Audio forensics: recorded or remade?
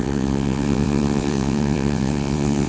remade